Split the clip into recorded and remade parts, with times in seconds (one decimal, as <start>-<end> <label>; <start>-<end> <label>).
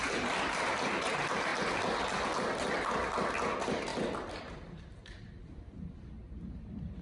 0.0-1.5 remade; 1.5-3.4 recorded; 3.4-3.9 remade; 3.9-4.4 recorded; 4.4-7.0 remade